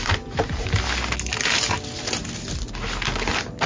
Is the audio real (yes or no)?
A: yes